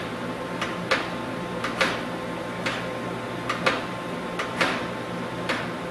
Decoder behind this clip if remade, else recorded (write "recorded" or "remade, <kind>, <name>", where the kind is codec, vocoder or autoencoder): recorded